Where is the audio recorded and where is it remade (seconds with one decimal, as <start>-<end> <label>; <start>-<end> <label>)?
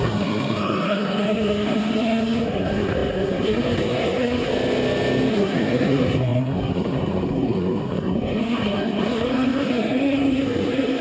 0.0-4.5 remade; 4.5-5.3 recorded; 5.3-11.0 remade